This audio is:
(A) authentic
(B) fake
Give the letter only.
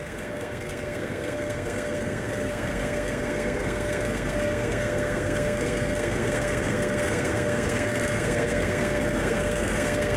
B